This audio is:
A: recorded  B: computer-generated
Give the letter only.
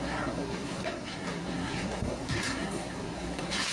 B